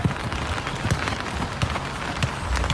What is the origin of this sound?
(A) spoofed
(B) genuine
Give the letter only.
B